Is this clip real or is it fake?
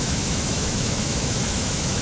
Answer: fake